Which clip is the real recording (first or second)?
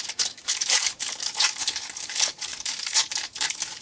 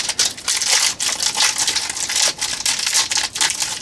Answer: second